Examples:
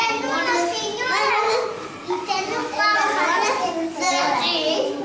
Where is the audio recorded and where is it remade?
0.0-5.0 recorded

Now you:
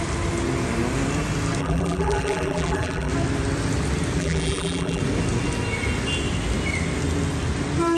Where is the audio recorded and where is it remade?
0.0-1.6 recorded; 1.6-3.1 remade; 3.1-4.2 recorded; 4.2-5.0 remade; 5.0-8.0 recorded

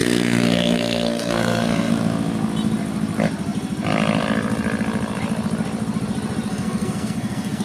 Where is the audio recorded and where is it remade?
0.0-1.9 remade; 1.9-6.5 recorded; 6.5-7.6 remade

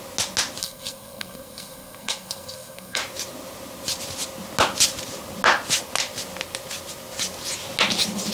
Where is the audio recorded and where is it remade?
0.0-0.6 recorded; 0.6-3.0 remade; 3.0-8.3 recorded

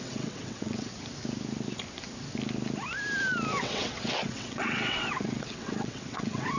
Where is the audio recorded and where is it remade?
0.0-0.9 remade; 0.9-3.6 recorded; 3.6-6.6 remade

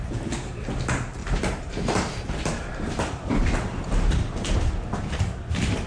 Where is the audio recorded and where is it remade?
0.0-1.2 recorded; 1.2-4.6 remade; 4.6-5.9 recorded

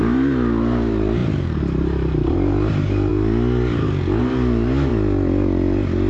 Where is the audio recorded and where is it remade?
0.0-3.1 remade; 3.1-4.2 recorded; 4.2-4.9 remade; 4.9-6.1 recorded